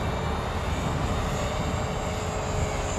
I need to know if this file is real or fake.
real